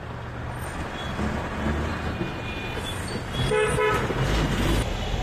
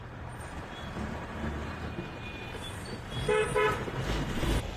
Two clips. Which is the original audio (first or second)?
first